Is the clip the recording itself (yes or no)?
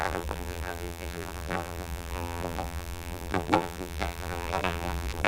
no